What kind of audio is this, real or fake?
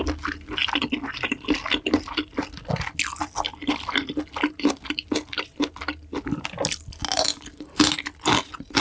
real